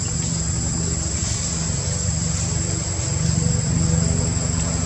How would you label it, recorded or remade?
remade